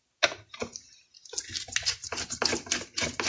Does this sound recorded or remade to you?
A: recorded